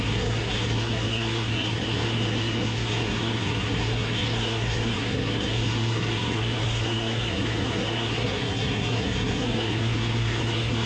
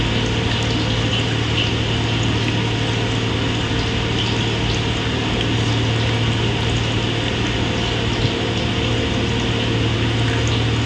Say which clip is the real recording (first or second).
second